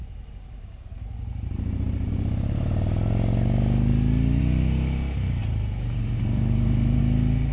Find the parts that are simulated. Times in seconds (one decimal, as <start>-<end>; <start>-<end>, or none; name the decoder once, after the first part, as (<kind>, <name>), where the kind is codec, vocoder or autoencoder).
0.0-2.1 (vocoder, BigVGAN v2); 5.4-7.0